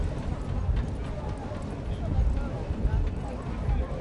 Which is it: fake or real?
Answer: real